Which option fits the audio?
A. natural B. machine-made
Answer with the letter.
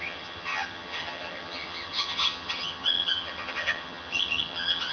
B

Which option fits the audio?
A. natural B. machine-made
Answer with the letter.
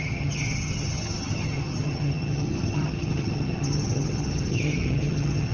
B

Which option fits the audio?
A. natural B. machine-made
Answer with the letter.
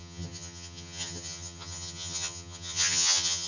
B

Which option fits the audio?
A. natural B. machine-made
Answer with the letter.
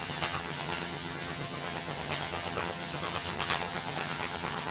B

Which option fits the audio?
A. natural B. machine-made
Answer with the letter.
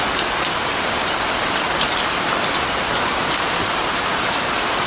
A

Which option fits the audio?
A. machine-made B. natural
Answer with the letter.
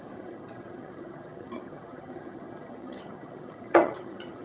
A